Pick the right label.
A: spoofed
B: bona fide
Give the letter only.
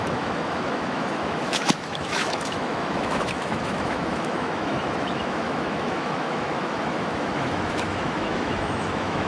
A